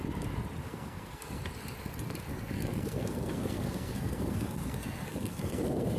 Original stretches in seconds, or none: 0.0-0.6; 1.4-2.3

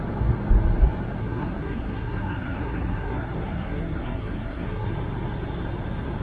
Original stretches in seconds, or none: 0.0-1.2; 4.9-6.2

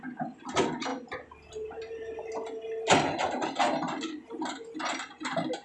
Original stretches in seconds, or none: 0.0-5.6

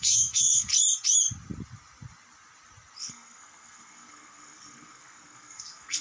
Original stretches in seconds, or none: 0.7-3.0